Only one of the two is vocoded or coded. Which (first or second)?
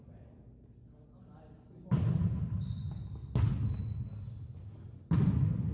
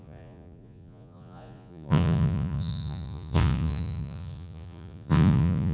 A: second